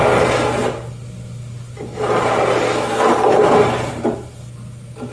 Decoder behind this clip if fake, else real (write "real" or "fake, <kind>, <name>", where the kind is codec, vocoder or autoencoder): real